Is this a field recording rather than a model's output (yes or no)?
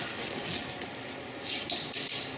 yes